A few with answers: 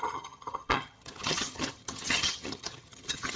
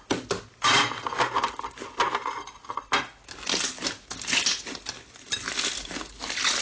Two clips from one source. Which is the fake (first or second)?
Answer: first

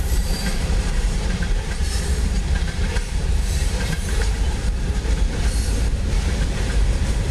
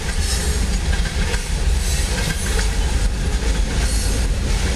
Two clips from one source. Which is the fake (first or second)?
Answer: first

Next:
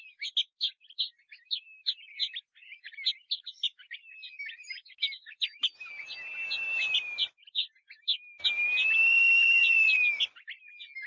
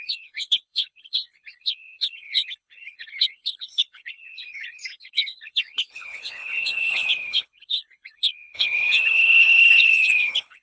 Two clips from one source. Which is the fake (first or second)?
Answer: second